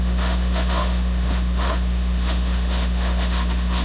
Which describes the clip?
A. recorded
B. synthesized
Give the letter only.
B